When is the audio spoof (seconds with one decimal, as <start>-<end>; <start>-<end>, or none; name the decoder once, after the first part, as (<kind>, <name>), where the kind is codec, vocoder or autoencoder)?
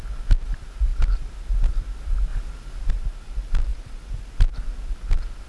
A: none